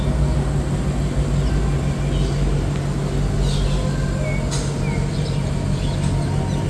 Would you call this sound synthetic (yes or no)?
no